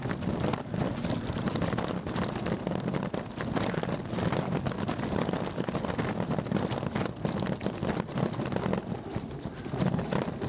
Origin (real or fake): real